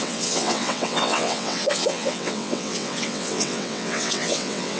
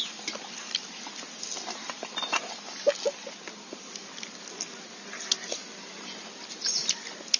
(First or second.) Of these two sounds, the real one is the second